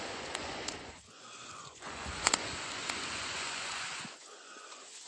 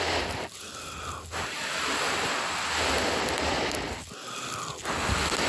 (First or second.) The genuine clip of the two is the second